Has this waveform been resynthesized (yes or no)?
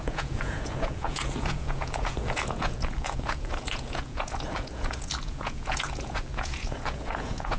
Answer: yes